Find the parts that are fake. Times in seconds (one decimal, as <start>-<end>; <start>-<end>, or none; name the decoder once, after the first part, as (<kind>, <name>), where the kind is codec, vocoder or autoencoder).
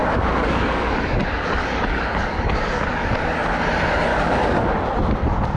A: 0.0-3.1 (codec, DAC); 4.1-4.7